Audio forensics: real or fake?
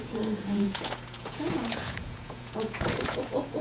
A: fake